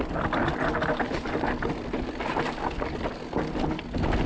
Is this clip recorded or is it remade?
recorded